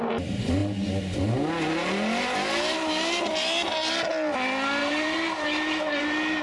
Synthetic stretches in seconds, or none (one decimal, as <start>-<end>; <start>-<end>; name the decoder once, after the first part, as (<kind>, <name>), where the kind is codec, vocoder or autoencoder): 4.8-6.0 (vocoder, BigVGAN v2)